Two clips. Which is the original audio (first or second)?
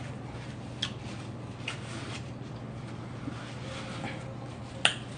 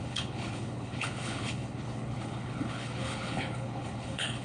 first